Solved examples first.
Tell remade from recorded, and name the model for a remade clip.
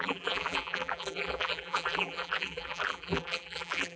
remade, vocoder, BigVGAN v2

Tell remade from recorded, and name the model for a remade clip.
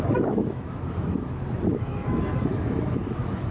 remade, autoencoder, DAC-VAE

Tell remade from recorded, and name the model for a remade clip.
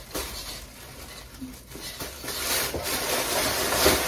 recorded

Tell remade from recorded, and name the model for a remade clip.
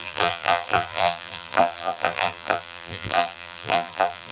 remade, vocoder, BigVGAN v2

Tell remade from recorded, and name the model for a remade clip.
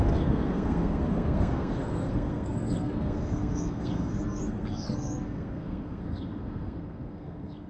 remade, codec, SNAC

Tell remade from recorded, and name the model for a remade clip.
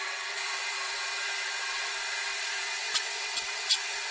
remade, vocoder, BigVGAN v2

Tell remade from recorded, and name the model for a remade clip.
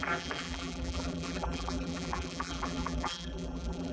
remade, vocoder, BigVGAN v2